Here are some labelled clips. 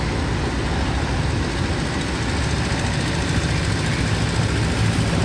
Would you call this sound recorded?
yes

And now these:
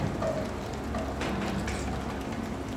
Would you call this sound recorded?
yes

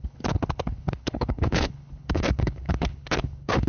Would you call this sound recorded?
no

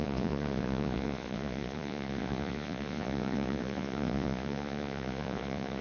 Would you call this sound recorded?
no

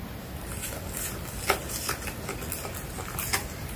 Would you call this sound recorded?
yes